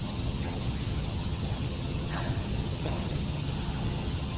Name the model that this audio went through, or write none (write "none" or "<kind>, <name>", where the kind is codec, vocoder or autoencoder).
vocoder, HiFi-GAN